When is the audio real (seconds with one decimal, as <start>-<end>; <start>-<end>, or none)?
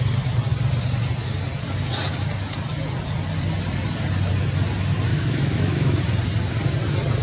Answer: 0.0-5.1; 6.0-7.2